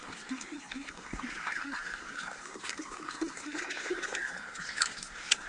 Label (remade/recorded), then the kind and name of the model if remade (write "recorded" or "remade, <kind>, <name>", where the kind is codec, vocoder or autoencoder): remade, codec, SNAC